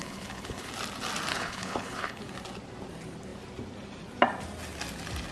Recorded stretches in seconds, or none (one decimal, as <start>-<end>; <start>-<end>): 0.7-1.3; 2.2-5.3